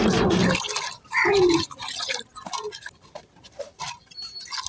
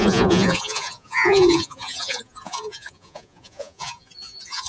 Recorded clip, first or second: first